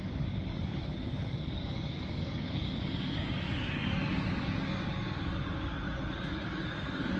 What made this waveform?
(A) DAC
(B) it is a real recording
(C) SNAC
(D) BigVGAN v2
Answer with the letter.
A